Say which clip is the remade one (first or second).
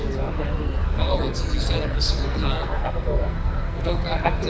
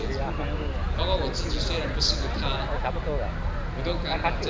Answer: first